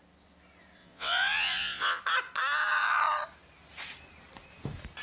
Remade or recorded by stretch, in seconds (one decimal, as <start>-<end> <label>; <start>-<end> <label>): 0.0-0.8 recorded; 0.8-2.0 remade; 2.0-5.0 recorded